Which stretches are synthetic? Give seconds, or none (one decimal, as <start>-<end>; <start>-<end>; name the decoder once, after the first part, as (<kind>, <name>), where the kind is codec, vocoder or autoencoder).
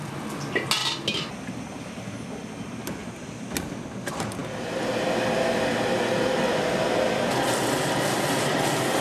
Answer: none